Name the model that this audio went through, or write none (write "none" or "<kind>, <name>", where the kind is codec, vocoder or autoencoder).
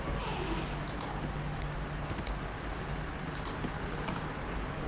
none